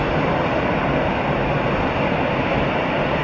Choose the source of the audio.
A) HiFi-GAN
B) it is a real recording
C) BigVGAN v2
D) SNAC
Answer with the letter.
B